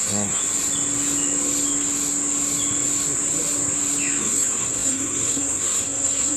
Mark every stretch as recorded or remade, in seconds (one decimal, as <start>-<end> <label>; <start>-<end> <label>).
0.0-0.4 remade; 0.4-4.2 recorded; 4.2-6.4 remade